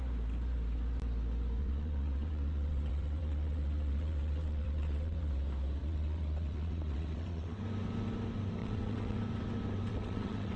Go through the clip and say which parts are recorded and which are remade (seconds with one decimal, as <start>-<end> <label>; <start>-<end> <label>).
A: 0.0-1.6 recorded; 1.6-5.3 remade; 5.3-5.8 recorded; 5.8-7.6 remade; 7.6-8.6 recorded; 8.6-9.2 remade; 9.2-9.9 recorded; 9.9-10.6 remade